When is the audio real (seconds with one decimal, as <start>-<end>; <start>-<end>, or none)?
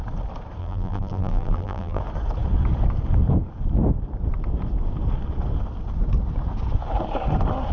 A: 0.0-0.6; 2.0-7.7